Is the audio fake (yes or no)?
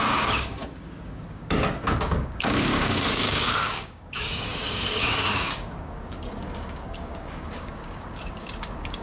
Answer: yes